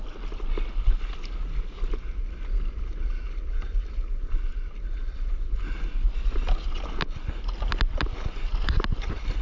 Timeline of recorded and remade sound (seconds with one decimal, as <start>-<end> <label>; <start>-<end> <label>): 0.0-9.4 recorded